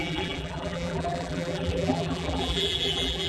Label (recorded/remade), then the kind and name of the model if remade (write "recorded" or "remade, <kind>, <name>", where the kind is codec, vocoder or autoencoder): remade, vocoder, BigVGAN v2